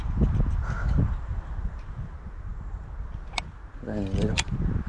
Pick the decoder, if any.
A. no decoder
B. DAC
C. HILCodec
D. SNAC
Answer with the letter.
A